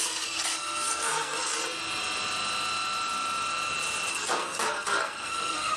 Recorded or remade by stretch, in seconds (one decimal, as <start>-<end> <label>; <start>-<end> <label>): 0.0-1.5 remade; 1.5-4.1 recorded; 4.1-5.8 remade